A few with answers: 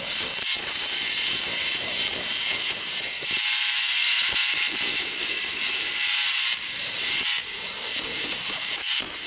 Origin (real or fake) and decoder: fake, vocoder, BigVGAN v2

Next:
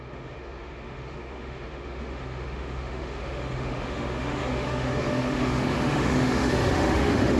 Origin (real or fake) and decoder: fake, autoencoder, DAC-VAE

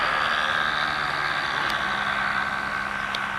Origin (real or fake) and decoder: real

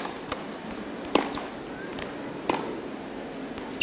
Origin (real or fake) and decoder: fake, vocoder, BigVGAN v2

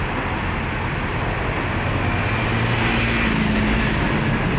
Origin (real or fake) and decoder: real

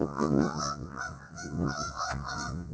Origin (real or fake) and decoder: fake, vocoder, WaveNeXt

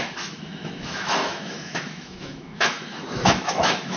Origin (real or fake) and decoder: fake, autoencoder, DAC-VAE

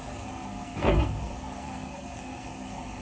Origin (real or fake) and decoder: fake, codec, SNAC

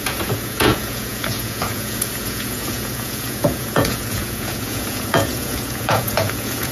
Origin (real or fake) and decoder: fake, vocoder, Vocos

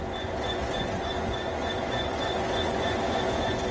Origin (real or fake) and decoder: fake, vocoder, Vocos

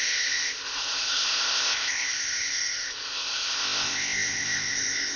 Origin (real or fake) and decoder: fake, codec, ZipCodec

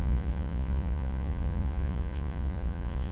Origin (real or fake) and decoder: fake, vocoder, Vocos